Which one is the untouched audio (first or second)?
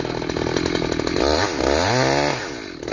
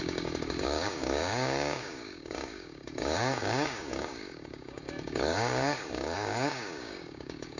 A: first